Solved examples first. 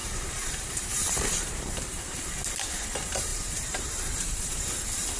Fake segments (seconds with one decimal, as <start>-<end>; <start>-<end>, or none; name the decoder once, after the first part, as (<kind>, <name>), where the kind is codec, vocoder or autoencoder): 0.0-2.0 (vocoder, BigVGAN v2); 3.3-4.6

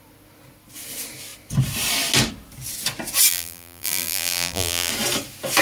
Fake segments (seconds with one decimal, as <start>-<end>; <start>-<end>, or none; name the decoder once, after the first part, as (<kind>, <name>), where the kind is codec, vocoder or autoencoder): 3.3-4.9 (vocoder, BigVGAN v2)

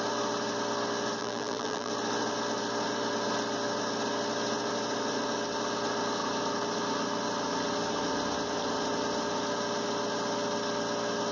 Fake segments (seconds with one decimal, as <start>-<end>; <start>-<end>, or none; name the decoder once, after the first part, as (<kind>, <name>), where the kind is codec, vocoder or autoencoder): 1.2-1.9 (vocoder, BigVGAN v2)

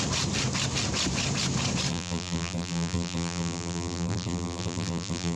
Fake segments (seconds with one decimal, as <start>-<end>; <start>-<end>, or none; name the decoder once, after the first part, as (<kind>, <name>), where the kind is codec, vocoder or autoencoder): 1.9-5.4 (vocoder, BigVGAN v2)

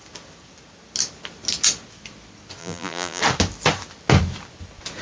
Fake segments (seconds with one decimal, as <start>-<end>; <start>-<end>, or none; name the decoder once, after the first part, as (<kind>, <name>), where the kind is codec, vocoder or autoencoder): 2.6-3.2 (vocoder, BigVGAN v2)

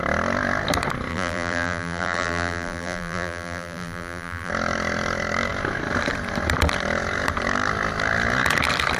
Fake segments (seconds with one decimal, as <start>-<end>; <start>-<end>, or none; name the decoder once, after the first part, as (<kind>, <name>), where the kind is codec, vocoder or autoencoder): 1.1-4.5 (vocoder, BigVGAN v2)

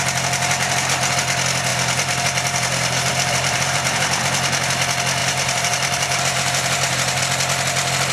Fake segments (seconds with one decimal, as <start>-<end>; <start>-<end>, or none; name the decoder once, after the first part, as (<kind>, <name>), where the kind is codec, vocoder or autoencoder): 1.7-4.2 (vocoder, BigVGAN v2); 5.2-7.2

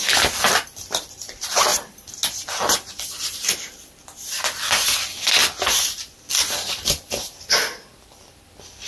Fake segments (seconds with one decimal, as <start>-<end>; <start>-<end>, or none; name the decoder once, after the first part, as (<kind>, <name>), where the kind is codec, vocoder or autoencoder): 0.0-1.7 (vocoder, BigVGAN v2); 4.3-8.9